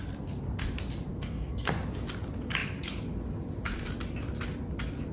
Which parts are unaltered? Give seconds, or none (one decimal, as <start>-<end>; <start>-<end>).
0.0-1.1; 1.7-5.1